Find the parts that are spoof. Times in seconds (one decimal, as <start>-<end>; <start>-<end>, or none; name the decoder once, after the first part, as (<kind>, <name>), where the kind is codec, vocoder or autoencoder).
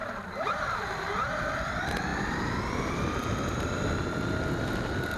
0.0-1.5 (vocoder, BigVGAN v2); 2.1-2.9